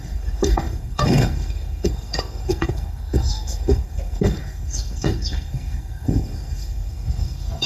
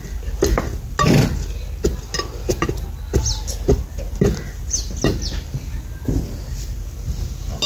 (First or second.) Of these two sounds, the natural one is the second